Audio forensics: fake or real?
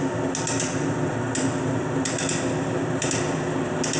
real